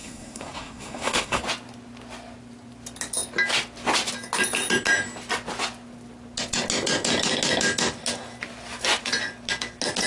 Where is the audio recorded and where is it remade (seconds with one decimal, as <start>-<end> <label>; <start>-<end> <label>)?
0.0-1.4 remade; 1.4-10.1 recorded